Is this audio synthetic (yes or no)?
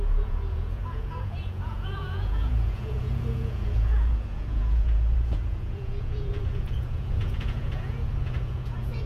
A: yes